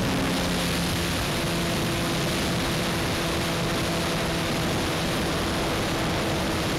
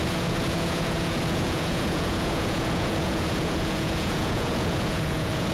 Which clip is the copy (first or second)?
second